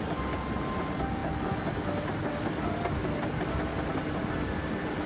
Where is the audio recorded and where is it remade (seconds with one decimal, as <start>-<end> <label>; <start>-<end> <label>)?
0.0-5.1 recorded